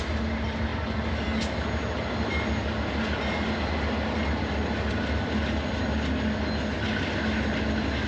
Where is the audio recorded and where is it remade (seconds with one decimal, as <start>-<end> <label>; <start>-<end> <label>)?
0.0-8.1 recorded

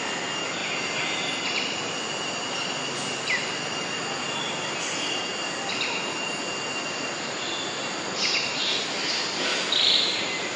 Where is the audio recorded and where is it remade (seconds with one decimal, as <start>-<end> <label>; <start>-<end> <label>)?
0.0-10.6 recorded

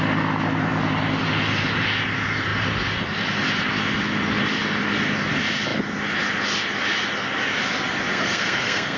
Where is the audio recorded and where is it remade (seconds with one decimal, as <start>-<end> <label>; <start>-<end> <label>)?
0.0-8.1 recorded; 8.1-9.0 remade

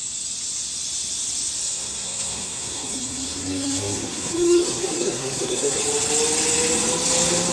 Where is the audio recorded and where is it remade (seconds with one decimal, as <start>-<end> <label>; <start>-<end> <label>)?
0.0-1.6 recorded; 1.6-5.8 remade; 5.8-7.5 recorded

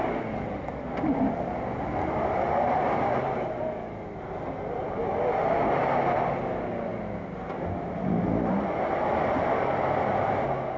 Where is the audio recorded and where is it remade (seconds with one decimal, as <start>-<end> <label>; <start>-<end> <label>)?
0.0-10.8 recorded